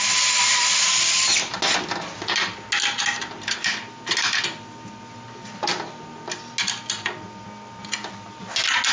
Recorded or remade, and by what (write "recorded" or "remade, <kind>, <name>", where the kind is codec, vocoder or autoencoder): recorded